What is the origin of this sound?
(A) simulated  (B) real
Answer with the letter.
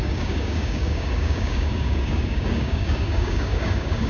A